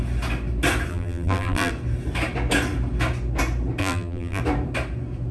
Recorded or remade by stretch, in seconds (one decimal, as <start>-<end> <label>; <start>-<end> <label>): 0.0-0.9 recorded; 0.9-1.7 remade; 1.7-3.8 recorded; 3.8-4.4 remade; 4.4-5.3 recorded